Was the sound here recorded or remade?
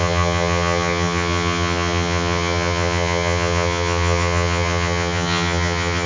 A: remade